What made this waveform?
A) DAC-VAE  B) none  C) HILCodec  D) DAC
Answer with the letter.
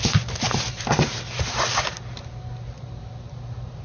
B